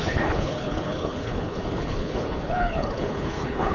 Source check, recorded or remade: remade